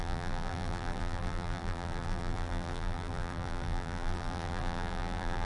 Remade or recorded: remade